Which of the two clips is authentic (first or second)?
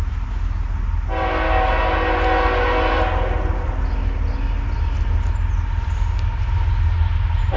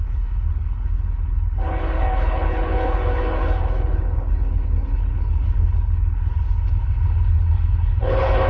first